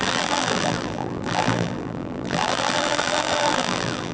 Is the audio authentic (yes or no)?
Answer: no